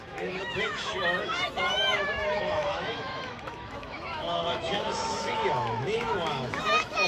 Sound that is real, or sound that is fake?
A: fake